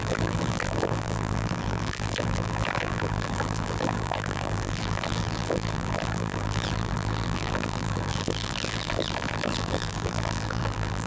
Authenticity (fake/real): fake